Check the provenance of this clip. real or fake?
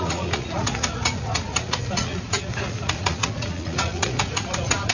fake